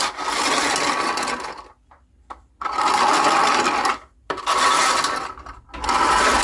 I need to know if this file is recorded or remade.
recorded